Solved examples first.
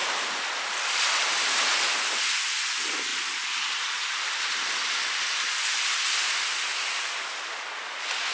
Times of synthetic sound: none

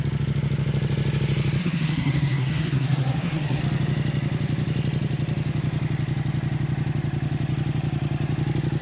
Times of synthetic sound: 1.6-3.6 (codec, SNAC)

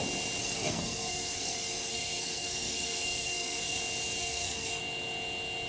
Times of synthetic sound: 0.4-3.8 (codec, SNAC); 4.2-4.8